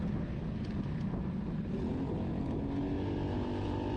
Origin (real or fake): real